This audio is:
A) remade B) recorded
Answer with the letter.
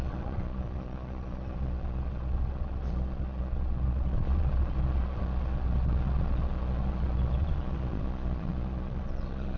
A